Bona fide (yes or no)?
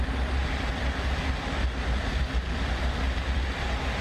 yes